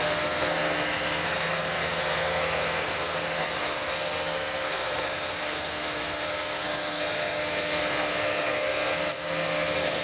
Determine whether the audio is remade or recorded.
remade